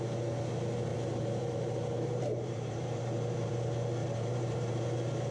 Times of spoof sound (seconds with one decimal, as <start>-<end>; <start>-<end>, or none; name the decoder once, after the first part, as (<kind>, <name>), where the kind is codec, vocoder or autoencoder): 0.9-3.5 (vocoder, BigVGAN v2); 4.0-4.8